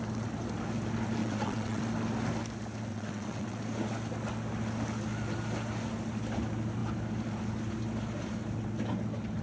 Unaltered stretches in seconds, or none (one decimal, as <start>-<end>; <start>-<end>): 0.0-1.2; 1.8-2.9; 3.6-9.4